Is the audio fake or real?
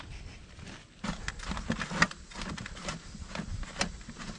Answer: real